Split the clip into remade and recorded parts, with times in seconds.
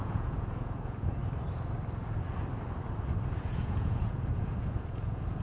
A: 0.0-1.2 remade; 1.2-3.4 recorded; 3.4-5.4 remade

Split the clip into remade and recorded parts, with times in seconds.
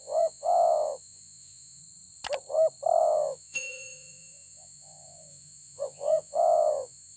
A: 0.0-1.8 remade; 1.8-3.0 recorded; 3.0-7.2 remade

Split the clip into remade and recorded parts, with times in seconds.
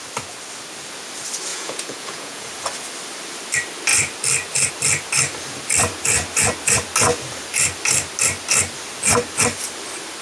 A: 0.0-1.5 recorded; 1.5-2.5 remade; 2.5-10.2 recorded